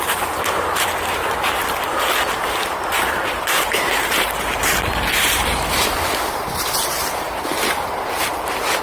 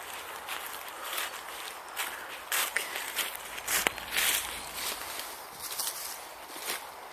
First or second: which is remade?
first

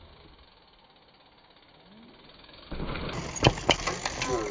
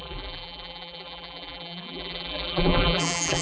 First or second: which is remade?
second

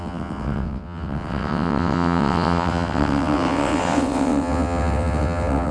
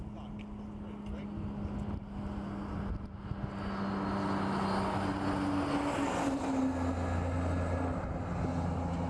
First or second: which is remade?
first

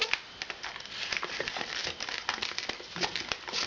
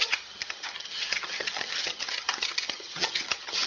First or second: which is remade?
second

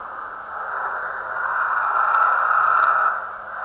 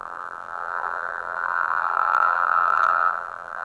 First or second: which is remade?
second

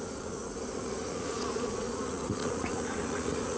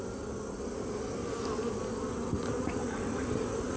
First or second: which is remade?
first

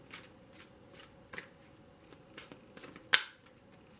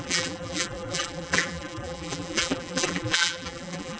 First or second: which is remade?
second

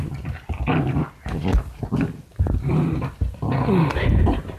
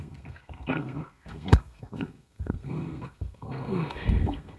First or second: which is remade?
second